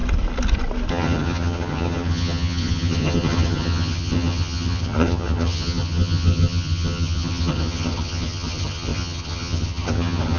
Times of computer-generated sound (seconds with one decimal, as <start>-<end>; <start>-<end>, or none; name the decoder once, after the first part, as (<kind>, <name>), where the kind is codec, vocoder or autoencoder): 0.9-10.4 (vocoder, HiFi-GAN)